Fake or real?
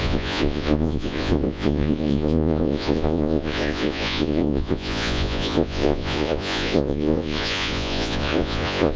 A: fake